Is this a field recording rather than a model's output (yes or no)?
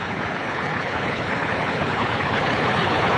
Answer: no